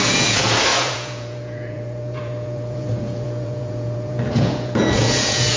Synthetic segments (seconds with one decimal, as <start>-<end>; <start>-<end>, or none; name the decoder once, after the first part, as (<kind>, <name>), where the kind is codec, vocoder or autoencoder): 0.0-5.6 (vocoder, Vocos)